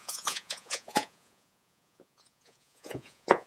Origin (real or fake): fake